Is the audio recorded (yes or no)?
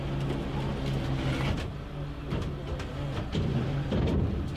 yes